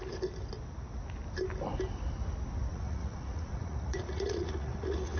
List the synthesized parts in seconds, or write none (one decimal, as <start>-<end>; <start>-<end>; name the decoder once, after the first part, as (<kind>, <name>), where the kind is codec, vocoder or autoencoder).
2.7-5.2 (vocoder, Vocos)